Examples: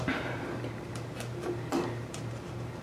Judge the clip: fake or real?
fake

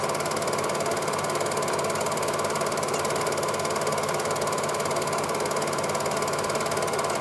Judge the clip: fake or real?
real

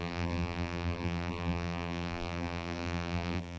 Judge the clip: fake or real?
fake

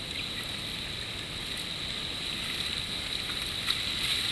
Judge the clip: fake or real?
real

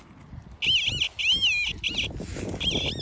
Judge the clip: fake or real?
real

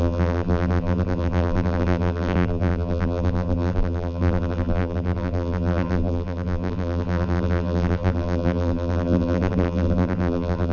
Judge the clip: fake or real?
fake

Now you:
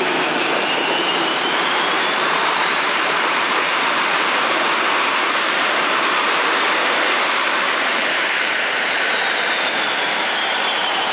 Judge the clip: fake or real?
fake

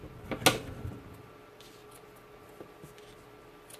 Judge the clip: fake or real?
real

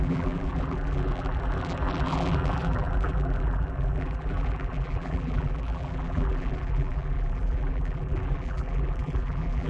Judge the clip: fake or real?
fake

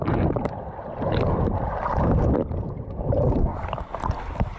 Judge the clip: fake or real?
fake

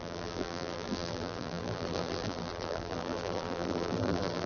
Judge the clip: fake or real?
fake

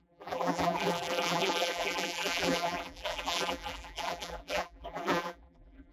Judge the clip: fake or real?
fake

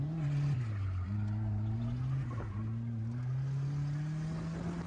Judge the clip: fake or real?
real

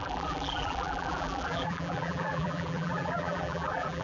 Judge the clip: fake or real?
fake